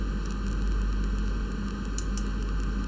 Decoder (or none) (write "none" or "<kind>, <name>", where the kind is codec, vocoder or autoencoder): none